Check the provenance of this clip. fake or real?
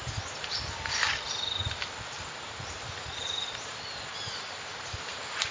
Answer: real